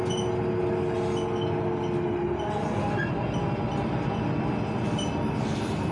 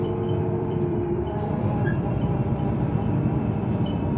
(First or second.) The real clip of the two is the first